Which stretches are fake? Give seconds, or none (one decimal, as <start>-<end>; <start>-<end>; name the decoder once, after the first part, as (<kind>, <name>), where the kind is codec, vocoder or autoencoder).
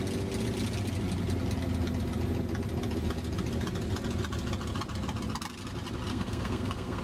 6.1-7.0 (codec, SNAC)